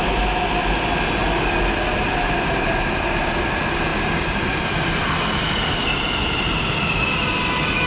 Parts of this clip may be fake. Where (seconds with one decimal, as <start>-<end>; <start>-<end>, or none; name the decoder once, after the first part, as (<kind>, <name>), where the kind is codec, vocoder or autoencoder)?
3.9-6.4 (vocoder, BigVGAN v2)